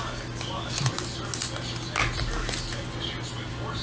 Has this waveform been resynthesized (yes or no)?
no